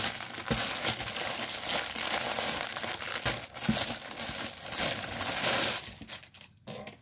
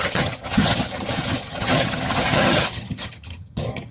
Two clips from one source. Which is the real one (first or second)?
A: first